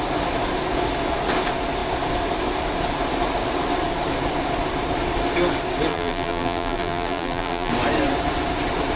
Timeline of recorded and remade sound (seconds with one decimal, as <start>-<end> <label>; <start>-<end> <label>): 0.0-5.9 recorded; 5.9-7.7 remade; 7.7-9.0 recorded